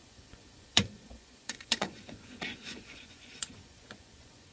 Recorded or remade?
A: remade